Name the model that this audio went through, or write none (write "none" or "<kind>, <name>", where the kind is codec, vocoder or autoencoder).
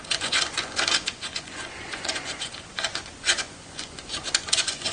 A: vocoder, Vocos